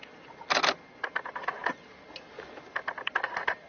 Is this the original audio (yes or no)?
yes